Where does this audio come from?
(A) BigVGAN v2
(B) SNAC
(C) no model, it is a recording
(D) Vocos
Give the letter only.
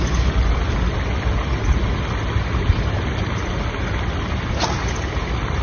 C